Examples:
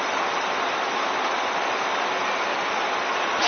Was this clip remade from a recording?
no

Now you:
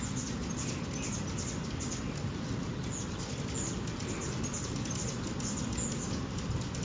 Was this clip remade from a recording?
no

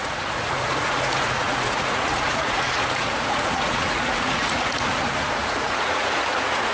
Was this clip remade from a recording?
yes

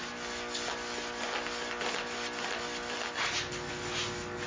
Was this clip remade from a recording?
no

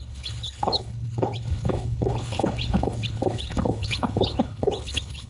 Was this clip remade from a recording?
yes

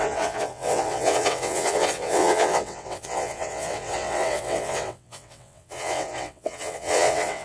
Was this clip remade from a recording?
yes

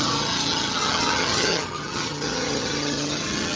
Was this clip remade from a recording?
yes